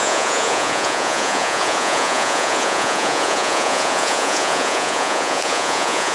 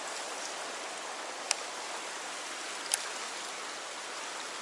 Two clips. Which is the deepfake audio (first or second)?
first